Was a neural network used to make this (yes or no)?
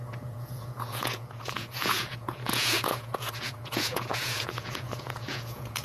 yes